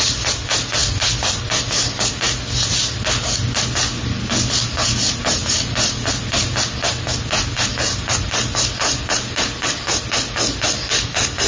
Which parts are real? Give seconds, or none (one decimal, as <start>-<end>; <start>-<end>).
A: 0.0-11.5